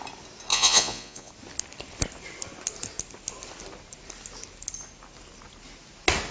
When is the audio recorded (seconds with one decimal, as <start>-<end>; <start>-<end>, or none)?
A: 0.0-0.5; 1.3-6.3